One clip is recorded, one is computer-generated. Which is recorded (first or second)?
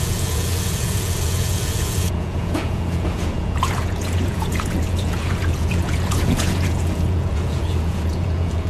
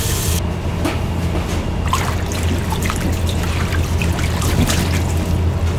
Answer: second